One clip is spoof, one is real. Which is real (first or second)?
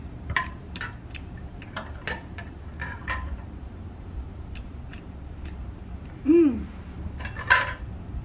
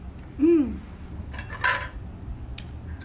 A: second